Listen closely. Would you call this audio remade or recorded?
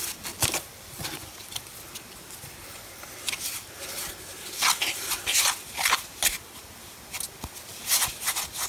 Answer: recorded